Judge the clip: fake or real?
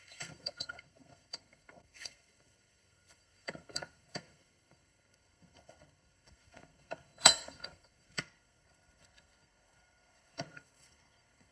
fake